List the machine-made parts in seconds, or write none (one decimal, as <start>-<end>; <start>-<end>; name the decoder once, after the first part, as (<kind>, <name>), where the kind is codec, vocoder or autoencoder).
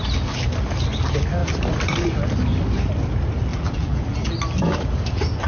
3.5-4.3 (vocoder, BigVGAN v2)